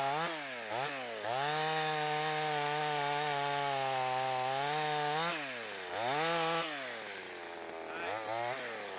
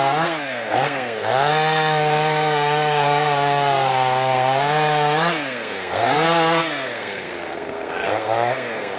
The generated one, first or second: second